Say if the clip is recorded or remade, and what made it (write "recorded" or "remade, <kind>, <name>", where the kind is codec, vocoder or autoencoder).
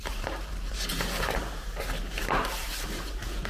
remade, vocoder, BigVGAN v2